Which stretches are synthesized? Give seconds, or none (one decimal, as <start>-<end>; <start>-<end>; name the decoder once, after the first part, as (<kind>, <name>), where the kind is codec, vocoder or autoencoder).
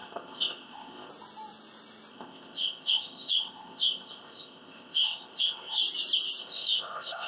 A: 0.0-1.1 (codec, ZipCodec); 2.1-5.8; 6.4-7.3